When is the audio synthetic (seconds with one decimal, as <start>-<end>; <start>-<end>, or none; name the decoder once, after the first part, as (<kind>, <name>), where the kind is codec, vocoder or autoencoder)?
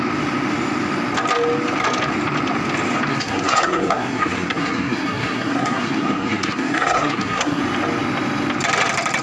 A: 3.1-7.6 (codec, SNAC)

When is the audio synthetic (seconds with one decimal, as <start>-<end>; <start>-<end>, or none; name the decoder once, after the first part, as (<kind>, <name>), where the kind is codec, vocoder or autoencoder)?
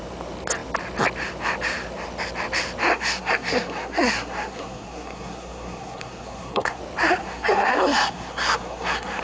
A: 2.9-6.8 (codec, SNAC); 7.2-9.2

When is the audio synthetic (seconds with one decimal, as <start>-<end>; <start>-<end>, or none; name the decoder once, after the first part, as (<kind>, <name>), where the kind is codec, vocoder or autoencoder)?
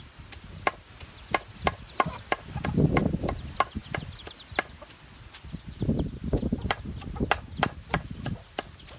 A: none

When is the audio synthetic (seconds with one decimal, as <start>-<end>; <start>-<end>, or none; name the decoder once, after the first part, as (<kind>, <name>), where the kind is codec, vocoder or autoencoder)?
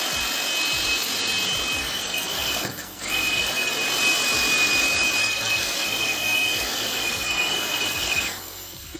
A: 1.8-3.7 (codec, SNAC); 5.2-9.0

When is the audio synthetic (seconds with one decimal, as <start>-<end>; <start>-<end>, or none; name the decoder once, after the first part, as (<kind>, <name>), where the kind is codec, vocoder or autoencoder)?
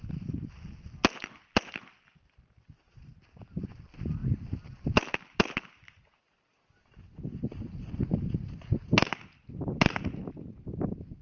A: none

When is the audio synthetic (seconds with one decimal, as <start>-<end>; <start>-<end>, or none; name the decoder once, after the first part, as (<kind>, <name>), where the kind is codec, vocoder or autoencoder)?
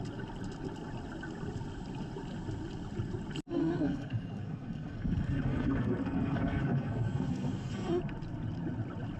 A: 3.6-7.9 (codec, SNAC)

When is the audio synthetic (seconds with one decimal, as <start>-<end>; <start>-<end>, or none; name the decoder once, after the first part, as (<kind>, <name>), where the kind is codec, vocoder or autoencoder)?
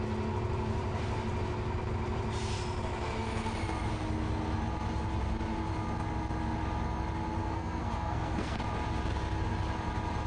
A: 7.4-8.6 (codec, SNAC)